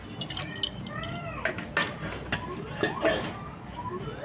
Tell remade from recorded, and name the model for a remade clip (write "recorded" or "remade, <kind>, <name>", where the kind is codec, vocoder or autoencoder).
recorded